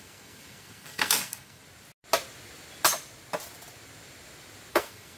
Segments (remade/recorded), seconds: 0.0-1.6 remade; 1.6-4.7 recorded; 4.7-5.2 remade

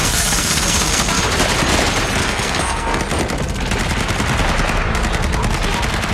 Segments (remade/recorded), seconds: 0.0-1.2 remade; 1.2-2.2 recorded; 2.2-3.0 remade; 3.0-6.1 recorded